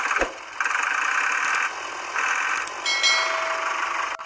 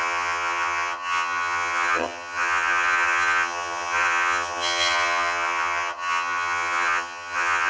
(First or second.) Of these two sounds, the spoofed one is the second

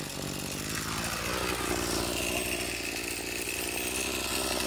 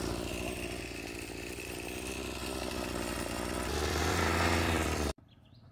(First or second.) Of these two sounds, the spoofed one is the second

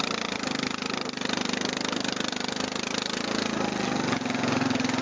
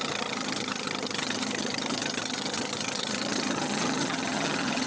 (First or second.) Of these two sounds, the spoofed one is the second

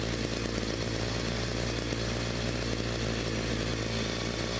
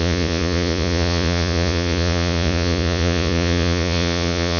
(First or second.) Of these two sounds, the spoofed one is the second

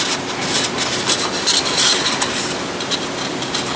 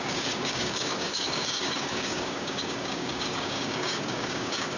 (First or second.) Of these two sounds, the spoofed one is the second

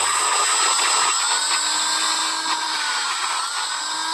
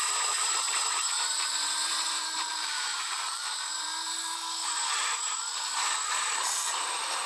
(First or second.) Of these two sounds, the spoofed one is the second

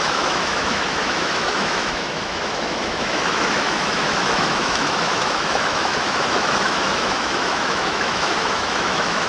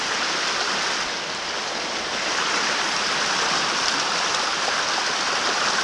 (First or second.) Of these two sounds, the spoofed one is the first